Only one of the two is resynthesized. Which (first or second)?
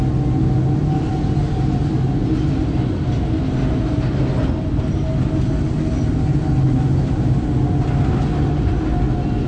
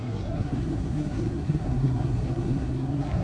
second